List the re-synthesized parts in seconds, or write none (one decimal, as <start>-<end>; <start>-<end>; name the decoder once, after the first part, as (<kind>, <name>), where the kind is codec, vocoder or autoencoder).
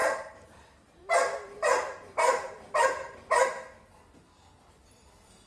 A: 0.0-3.3 (vocoder, BigVGAN v2)